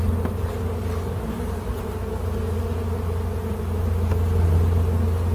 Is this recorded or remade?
recorded